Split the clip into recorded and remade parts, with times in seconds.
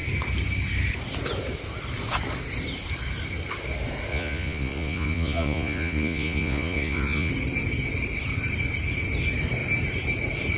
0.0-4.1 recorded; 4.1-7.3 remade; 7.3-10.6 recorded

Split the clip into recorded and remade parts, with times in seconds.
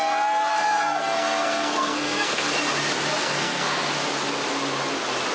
0.0-0.5 recorded; 0.5-2.5 remade; 2.5-3.2 recorded; 3.2-3.8 remade; 3.8-5.3 recorded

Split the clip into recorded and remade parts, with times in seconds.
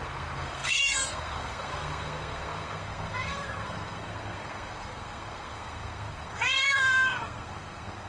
0.0-8.1 remade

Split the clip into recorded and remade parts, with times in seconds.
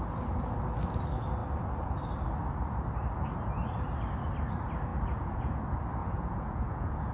0.0-4.9 recorded; 4.9-5.6 remade; 5.6-6.0 recorded; 6.0-7.1 remade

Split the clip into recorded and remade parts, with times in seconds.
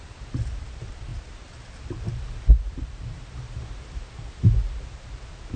0.0-5.6 recorded